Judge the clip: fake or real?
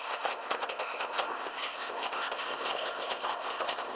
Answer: fake